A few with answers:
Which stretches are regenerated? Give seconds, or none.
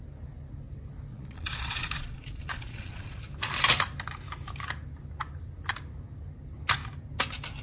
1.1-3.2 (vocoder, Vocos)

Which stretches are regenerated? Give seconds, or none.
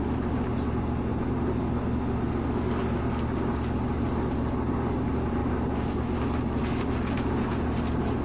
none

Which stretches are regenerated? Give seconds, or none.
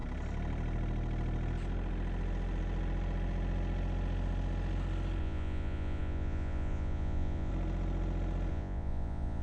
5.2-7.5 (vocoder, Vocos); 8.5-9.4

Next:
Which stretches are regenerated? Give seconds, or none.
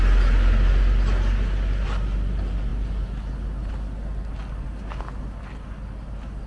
none